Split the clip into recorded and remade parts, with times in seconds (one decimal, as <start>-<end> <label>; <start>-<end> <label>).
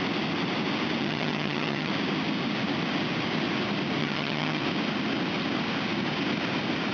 0.0-1.0 recorded; 1.0-1.9 remade; 1.9-4.0 recorded; 4.0-4.6 remade; 4.6-6.9 recorded